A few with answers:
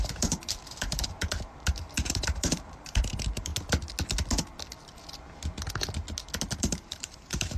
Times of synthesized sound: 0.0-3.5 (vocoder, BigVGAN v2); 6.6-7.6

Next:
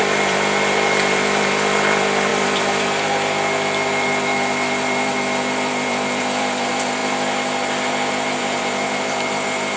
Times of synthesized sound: 0.0-7.0 (vocoder, BigVGAN v2); 8.4-9.8

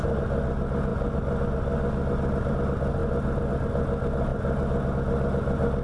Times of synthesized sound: none